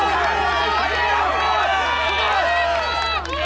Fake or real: real